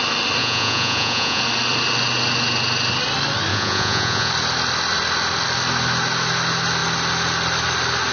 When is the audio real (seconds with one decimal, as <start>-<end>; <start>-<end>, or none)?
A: 0.0-0.4; 1.4-3.5; 4.3-8.1